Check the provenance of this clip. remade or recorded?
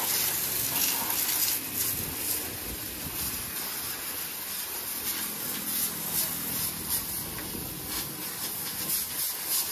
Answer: recorded